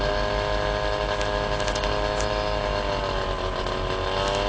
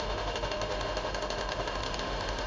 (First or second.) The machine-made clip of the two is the second